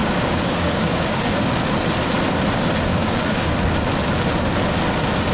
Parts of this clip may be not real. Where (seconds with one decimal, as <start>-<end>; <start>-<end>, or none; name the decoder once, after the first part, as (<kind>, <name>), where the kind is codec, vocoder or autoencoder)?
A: 0.0-1.5 (codec, DAC); 2.9-3.5